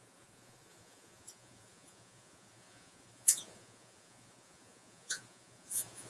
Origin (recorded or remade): remade